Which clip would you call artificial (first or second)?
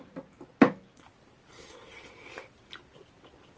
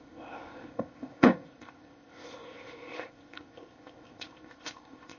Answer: second